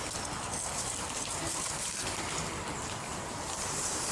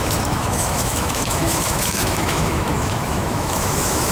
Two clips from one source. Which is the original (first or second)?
first